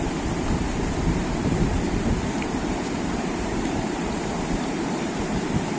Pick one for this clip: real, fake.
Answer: fake